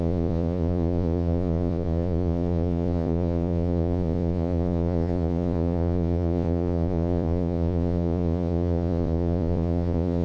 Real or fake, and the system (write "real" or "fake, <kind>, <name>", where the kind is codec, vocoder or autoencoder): fake, vocoder, Vocos